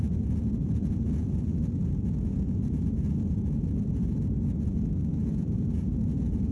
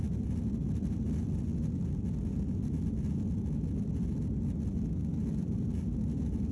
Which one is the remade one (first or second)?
first